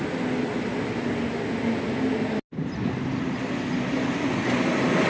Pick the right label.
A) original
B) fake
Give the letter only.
A